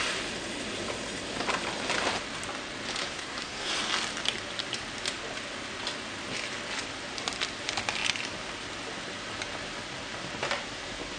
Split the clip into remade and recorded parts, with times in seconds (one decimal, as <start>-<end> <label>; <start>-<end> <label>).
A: 0.0-3.0 recorded; 3.0-3.7 remade; 3.7-11.2 recorded